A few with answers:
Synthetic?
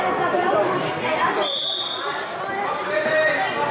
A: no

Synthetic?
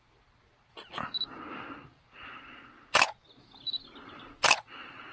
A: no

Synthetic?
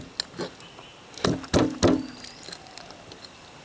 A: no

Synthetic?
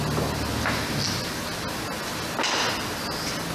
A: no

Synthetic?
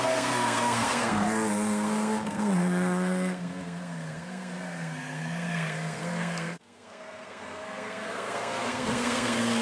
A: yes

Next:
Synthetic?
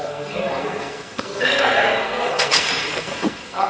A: yes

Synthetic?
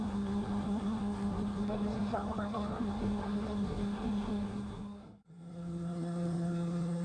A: yes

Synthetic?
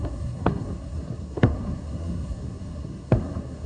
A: yes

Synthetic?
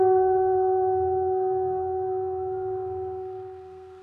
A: yes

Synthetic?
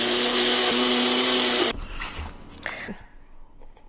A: no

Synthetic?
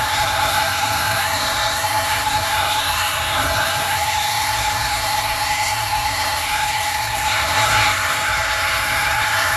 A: yes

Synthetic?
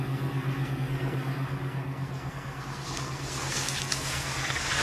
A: yes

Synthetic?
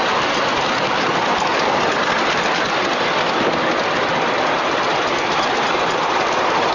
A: no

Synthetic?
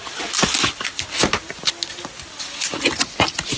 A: no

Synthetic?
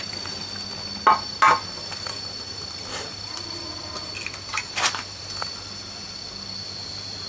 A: no